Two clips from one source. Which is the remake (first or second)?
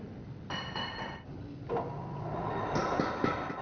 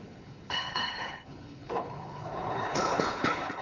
second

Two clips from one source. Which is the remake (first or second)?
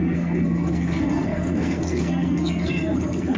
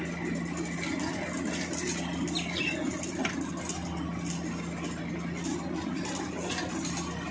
first